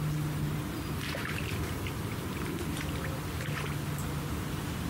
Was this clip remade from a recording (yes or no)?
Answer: no